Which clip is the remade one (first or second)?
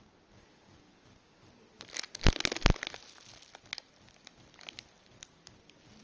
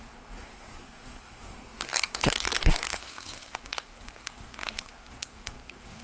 second